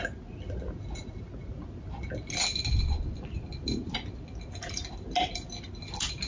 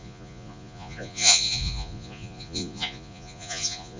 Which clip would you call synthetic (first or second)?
second